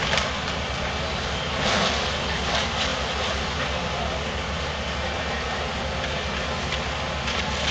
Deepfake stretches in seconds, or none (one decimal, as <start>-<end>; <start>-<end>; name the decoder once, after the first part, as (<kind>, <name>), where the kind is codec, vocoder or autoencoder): none